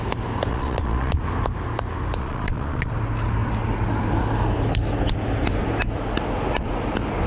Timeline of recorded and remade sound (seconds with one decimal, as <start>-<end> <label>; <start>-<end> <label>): 0.0-0.5 recorded; 0.5-1.2 remade; 1.2-2.2 recorded; 2.2-2.9 remade; 2.9-7.3 recorded